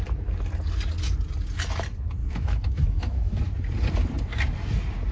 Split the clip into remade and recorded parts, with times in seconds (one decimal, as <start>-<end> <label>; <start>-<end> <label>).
0.0-2.2 recorded; 2.2-3.4 remade; 3.4-5.1 recorded